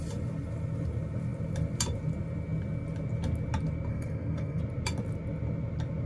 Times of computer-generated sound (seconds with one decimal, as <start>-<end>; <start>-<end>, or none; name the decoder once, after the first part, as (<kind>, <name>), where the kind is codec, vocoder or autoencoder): 3.9-4.6 (codec, SNAC)